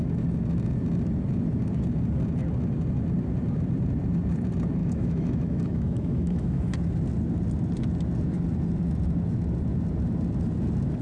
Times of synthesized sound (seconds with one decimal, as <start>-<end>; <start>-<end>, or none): 4.8-6.7